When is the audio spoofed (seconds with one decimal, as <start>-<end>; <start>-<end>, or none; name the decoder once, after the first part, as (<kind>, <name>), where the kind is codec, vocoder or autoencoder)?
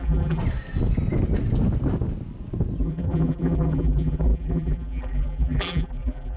0.0-0.4 (vocoder, BigVGAN v2); 2.8-6.4